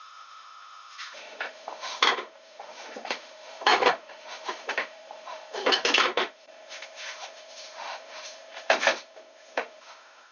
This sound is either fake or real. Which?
fake